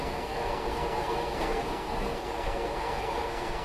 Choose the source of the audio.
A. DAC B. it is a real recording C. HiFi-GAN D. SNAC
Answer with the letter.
D